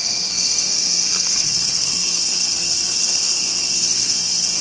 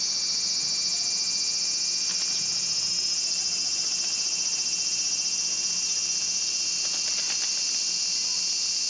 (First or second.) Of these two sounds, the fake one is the first